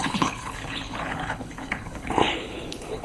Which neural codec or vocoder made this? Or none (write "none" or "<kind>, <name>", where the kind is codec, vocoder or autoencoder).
codec, HILCodec